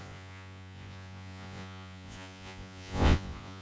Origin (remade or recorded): remade